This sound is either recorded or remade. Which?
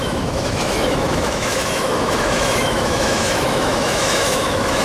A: remade